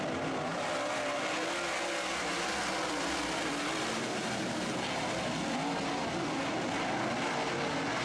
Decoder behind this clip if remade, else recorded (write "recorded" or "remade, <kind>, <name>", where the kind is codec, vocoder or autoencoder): recorded